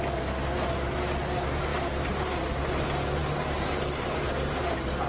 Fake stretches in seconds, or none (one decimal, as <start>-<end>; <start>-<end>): none